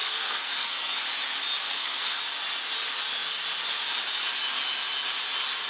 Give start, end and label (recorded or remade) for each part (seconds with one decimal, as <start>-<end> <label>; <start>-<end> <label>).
0.0-1.0 remade; 1.0-1.6 recorded; 1.6-2.2 remade; 2.2-5.7 recorded